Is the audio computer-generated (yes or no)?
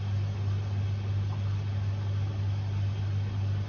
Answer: no